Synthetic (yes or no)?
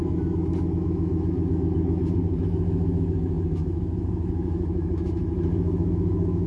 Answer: yes